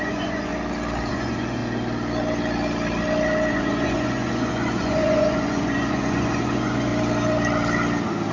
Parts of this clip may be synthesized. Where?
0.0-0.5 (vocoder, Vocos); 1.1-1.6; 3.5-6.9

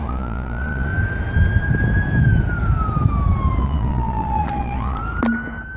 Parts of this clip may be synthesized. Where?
0.0-0.9 (vocoder, Vocos); 3.6-5.0